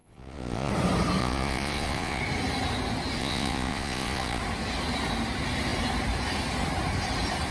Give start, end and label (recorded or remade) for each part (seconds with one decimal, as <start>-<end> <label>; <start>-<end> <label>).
0.0-0.7 remade; 0.7-1.2 recorded; 1.2-2.2 remade; 2.2-3.2 recorded; 3.2-4.4 remade; 4.4-7.5 recorded